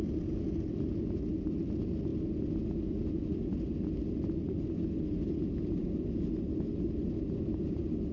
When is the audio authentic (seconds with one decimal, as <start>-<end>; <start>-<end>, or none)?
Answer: 0.0-8.1